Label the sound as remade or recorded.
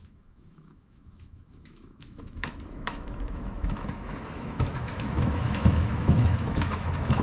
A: remade